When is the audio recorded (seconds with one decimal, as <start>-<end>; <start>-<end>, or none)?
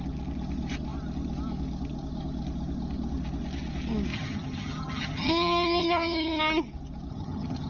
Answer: 0.0-4.1; 6.4-7.1